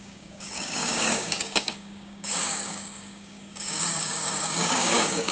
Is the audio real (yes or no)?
no